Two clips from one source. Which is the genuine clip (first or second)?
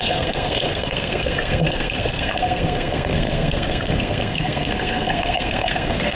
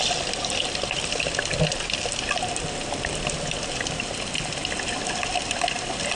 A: second